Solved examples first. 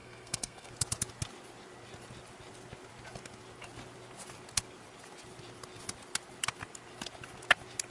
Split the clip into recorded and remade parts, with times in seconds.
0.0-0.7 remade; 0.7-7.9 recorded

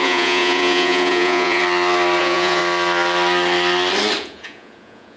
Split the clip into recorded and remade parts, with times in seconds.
0.0-1.6 remade; 1.6-2.2 recorded; 2.2-2.6 remade; 2.6-4.2 recorded; 4.2-5.2 remade

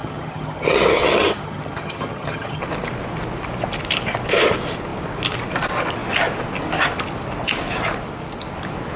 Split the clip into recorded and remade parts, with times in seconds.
0.0-2.6 remade; 2.6-9.0 recorded

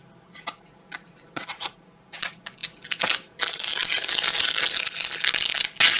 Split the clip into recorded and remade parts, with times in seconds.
0.0-6.0 recorded